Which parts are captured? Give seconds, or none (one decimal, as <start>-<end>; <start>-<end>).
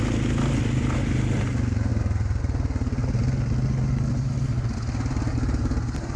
0.0-6.2